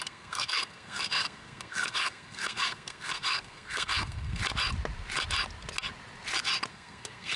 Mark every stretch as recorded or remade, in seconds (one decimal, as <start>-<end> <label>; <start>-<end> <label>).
0.0-4.4 remade; 4.4-6.7 recorded; 6.7-7.4 remade